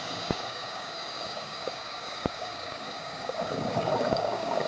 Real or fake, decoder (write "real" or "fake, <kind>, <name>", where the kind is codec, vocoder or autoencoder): fake, codec, DAC